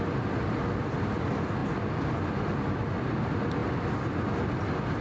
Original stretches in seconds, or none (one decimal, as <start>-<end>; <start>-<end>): 0.0-1.6; 2.3-5.0